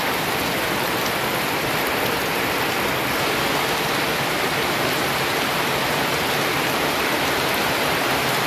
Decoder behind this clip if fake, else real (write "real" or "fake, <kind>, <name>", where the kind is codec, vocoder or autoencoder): real